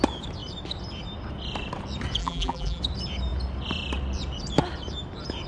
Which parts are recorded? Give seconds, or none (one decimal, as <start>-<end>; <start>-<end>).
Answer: 0.0-2.2; 2.8-5.5